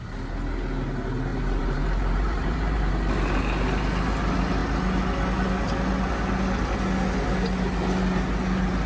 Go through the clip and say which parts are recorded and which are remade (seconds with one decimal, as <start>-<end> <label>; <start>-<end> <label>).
0.0-1.3 recorded; 1.3-2.9 remade; 2.9-8.9 recorded